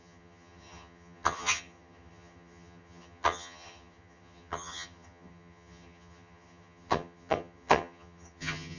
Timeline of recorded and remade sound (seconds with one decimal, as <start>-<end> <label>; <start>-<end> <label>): 0.0-8.8 remade